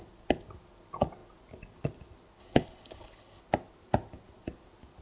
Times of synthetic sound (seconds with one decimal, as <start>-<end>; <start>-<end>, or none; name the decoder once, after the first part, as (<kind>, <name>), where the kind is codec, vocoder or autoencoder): 2.4-3.4 (codec, HILCodec)